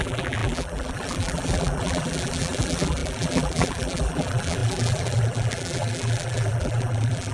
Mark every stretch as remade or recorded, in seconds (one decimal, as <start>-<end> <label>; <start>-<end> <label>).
0.0-7.3 remade